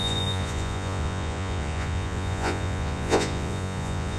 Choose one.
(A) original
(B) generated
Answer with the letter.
B